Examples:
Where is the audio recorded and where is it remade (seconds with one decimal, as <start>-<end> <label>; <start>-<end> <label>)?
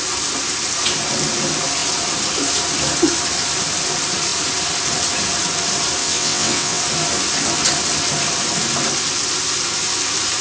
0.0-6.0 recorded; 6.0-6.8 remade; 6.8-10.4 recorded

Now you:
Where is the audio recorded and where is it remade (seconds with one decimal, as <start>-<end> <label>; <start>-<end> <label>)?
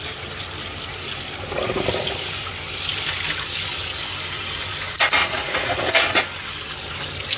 0.0-5.2 recorded; 5.2-5.8 remade; 5.8-7.4 recorded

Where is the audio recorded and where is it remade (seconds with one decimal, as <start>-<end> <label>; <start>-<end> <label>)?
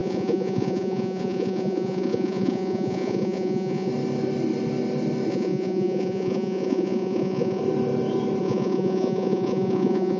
0.0-3.9 remade; 3.9-5.3 recorded; 5.3-7.6 remade; 7.6-8.4 recorded; 8.4-10.2 remade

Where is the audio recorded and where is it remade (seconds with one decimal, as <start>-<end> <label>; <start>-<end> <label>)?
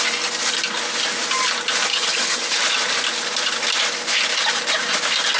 0.0-1.9 recorded; 1.9-2.6 remade; 2.6-5.4 recorded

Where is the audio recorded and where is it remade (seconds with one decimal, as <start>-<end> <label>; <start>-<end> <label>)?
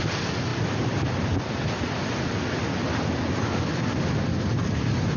0.0-5.2 recorded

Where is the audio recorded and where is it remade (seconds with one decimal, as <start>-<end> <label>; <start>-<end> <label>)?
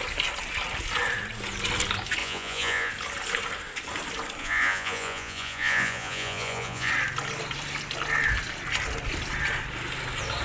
0.0-2.2 recorded; 2.2-2.9 remade; 2.9-4.4 recorded; 4.4-6.9 remade; 6.9-10.4 recorded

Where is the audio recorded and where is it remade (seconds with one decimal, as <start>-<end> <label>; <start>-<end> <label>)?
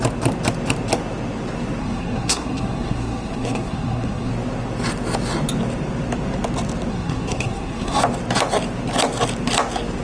0.0-1.8 recorded; 1.8-4.3 remade; 4.3-6.9 recorded; 6.9-8.0 remade; 8.0-10.0 recorded